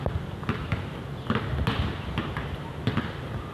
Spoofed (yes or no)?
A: no